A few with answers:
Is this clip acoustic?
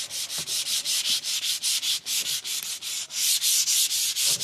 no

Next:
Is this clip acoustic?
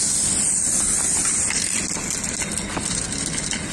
yes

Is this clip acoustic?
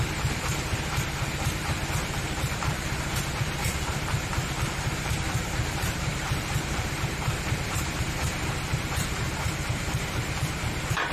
no